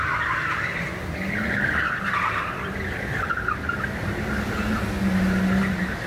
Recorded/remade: recorded